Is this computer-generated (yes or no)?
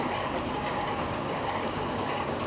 yes